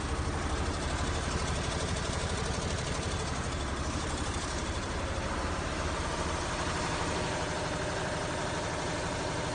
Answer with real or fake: fake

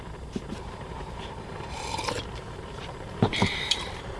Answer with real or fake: fake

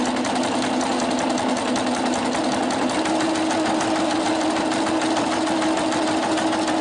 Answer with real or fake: real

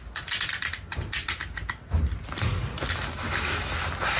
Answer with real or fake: real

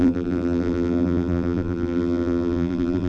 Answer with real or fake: fake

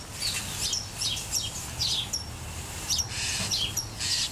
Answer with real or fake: real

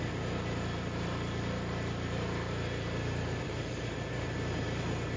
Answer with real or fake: fake